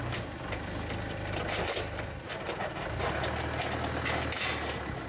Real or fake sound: real